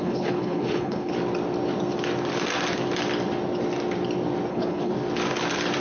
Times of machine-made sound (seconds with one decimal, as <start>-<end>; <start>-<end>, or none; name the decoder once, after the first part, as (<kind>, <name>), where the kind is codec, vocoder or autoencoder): 0.0-1.1 (codec, HILCodec); 4.5-4.9